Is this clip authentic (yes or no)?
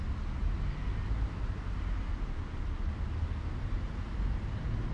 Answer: yes